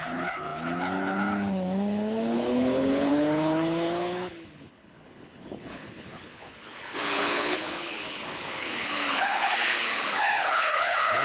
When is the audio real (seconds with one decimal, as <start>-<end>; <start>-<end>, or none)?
none